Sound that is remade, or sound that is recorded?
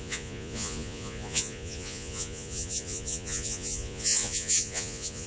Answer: remade